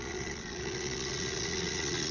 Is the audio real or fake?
fake